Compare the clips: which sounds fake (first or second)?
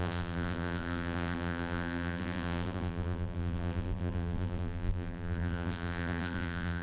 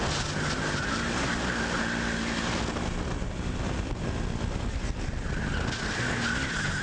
first